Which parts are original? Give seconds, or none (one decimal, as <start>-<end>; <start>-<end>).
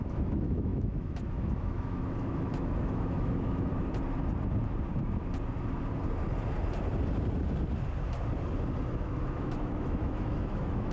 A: 3.7-8.9